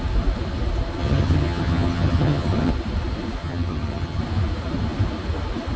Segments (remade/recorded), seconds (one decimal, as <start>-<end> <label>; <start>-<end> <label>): 0.0-1.0 recorded; 1.0-2.7 remade; 2.7-3.4 recorded; 3.4-4.2 remade; 4.2-5.8 recorded